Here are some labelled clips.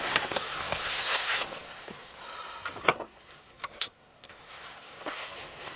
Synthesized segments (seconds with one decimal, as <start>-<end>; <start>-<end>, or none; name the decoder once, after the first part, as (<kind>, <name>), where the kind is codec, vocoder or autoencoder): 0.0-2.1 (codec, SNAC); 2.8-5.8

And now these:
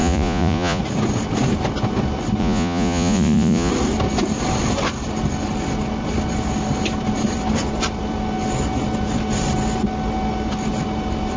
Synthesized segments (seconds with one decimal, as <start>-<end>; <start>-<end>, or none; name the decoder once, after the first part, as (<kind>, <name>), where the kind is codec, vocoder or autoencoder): 0.0-0.8 (vocoder, Vocos); 2.4-3.7

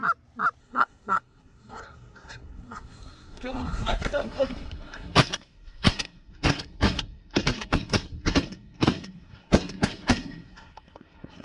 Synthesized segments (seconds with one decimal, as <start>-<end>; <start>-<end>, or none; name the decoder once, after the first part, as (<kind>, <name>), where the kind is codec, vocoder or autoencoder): 0.6-11.4 (codec, SNAC)

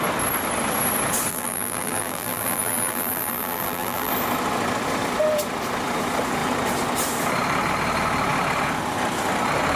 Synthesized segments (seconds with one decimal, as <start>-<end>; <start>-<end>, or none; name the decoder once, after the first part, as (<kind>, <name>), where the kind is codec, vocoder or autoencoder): 1.3-4.1 (vocoder, BigVGAN v2)

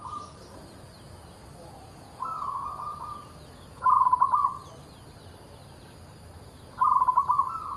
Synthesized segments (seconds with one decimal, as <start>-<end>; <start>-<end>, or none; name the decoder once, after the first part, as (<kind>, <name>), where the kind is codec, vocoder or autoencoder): 1.7-2.9 (vocoder, Vocos); 3.5-4.4

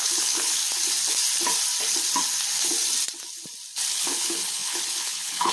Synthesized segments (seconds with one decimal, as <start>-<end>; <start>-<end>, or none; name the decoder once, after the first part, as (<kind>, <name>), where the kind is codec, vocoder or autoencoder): 0.0-0.6 (codec, HILCodec); 3.9-5.5

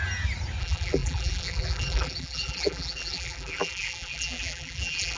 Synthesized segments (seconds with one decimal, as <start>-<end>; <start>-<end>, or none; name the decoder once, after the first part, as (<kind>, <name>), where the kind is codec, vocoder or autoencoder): 0.6-5.2 (vocoder, BigVGAN v2)